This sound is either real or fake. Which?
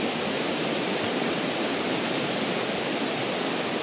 real